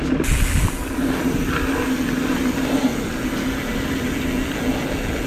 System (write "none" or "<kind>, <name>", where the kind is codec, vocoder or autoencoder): none